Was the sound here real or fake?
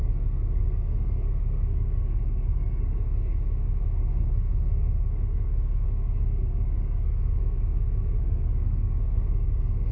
fake